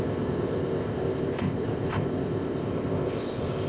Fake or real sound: fake